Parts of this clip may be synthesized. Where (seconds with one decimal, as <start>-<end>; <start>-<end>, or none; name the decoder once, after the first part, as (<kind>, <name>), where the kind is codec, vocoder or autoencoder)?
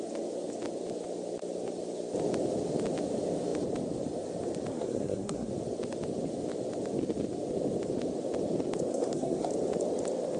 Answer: 4.7-5.5 (codec, SNAC); 8.9-9.5